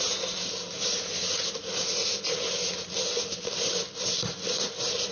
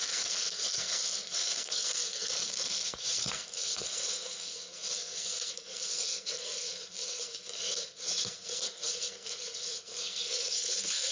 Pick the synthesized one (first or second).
second